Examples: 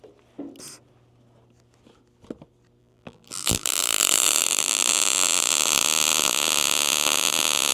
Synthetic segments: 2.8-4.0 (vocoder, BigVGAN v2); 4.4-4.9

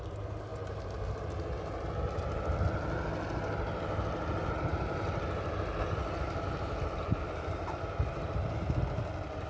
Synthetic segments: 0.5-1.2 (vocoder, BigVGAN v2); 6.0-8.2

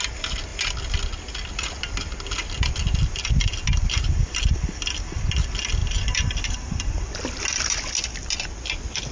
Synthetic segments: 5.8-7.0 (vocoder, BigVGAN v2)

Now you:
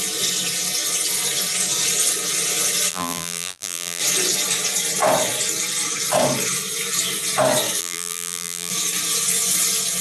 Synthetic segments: 2.9-4.0 (vocoder, BigVGAN v2); 7.8-8.7

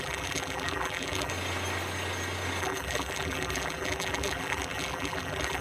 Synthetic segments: 0.0-1.3 (vocoder, BigVGAN v2); 2.6-5.6

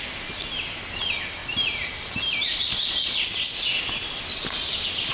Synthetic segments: none